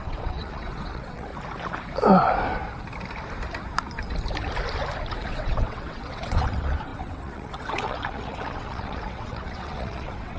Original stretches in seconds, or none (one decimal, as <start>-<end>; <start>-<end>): 1.3-5.1